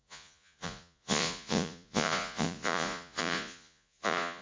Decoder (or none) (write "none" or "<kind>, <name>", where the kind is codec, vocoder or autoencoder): vocoder, Vocos